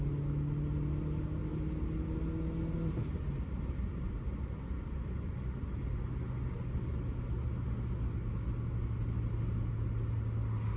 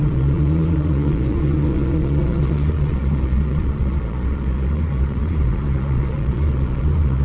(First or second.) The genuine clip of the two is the first